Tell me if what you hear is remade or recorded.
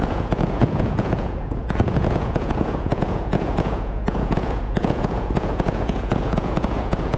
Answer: remade